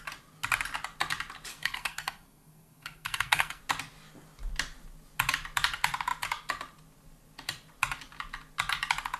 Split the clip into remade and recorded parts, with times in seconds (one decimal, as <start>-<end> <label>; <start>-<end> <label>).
0.0-1.5 recorded; 1.5-3.6 remade; 3.6-9.2 recorded